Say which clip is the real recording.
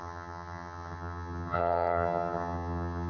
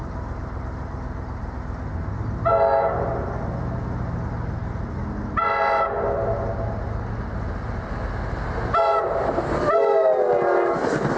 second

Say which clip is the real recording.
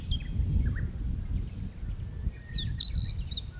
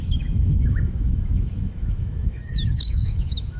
first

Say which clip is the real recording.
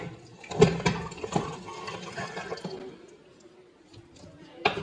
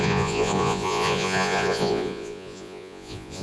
first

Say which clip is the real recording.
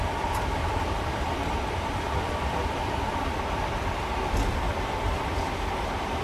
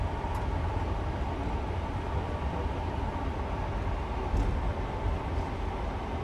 second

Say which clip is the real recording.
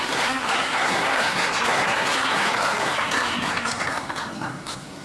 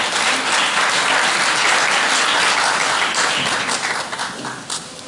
second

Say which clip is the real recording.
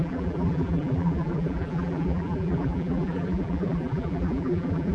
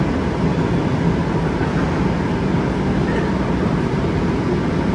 second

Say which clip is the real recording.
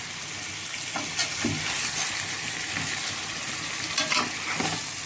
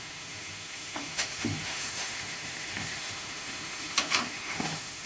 first